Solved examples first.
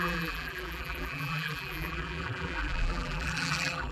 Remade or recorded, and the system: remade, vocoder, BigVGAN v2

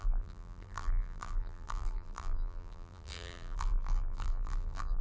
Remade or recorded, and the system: remade, vocoder, BigVGAN v2